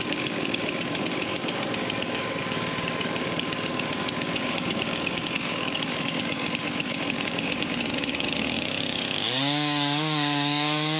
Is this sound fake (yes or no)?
yes